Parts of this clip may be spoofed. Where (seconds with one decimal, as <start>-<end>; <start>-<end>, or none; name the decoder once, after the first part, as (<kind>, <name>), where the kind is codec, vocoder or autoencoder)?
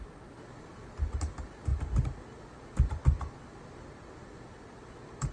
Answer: none